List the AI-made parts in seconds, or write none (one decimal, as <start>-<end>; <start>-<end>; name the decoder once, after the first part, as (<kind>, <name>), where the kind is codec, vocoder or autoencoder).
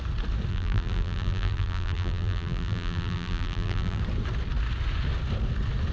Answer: 0.5-4.0 (vocoder, BigVGAN v2)